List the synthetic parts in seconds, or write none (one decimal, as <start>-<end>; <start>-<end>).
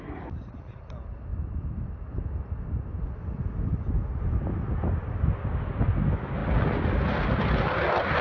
none